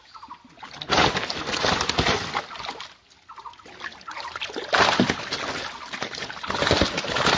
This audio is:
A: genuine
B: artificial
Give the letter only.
A